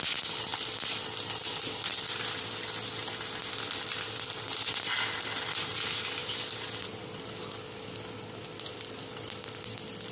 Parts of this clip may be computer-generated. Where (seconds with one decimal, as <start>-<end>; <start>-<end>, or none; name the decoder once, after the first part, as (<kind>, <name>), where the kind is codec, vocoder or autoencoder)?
none